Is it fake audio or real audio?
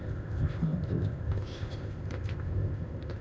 fake